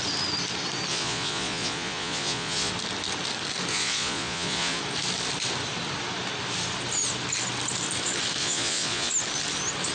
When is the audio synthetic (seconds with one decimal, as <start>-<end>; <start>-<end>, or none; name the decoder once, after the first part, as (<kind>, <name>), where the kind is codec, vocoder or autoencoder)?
0.9-2.7 (vocoder, Vocos); 3.7-4.8; 8.4-9.1